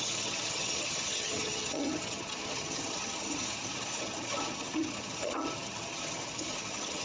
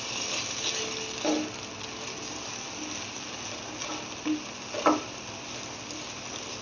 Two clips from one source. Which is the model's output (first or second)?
first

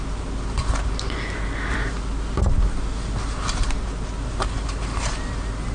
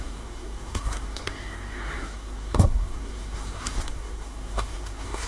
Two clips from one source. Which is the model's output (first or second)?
second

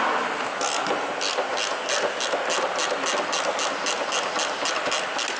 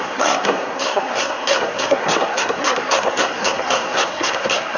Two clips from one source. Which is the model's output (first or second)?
second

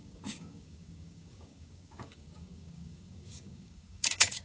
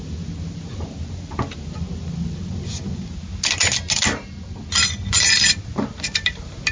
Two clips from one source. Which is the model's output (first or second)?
first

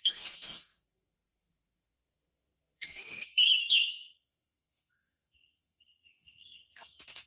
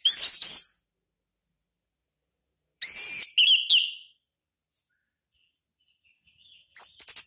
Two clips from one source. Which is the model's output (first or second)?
first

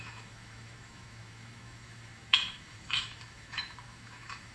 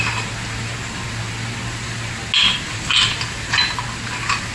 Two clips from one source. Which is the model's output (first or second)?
first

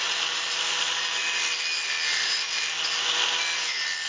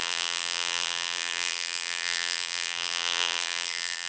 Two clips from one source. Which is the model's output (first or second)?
second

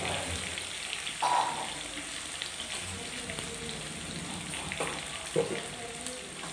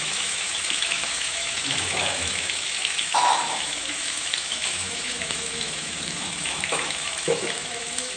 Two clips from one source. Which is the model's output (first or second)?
second